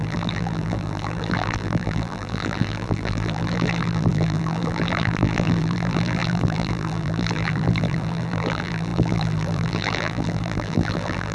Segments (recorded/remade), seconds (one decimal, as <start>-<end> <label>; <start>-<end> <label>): 0.0-11.3 remade